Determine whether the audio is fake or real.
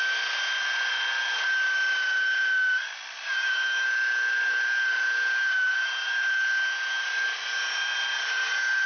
real